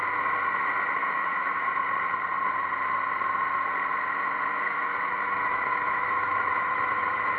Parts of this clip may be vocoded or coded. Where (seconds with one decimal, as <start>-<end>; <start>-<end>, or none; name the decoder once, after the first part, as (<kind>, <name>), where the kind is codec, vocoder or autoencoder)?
1.0-1.7 (autoencoder, DAC-VAE); 4.5-7.4